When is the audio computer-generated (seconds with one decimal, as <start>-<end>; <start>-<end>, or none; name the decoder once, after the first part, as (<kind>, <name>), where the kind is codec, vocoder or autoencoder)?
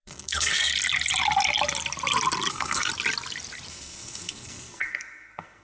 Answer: 0.0-0.7 (codec, SNAC); 2.5-2.9; 3.7-5.6